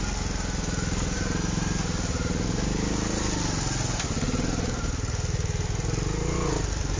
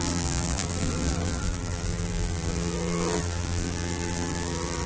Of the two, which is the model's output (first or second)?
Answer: second